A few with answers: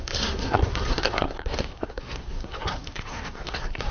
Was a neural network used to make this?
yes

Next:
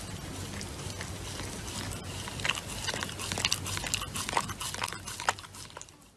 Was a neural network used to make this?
no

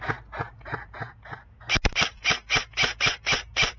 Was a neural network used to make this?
no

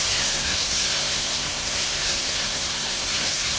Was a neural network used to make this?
yes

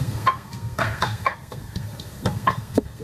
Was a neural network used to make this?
yes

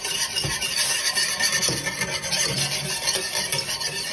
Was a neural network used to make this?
no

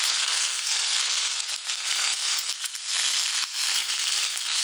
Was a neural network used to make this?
yes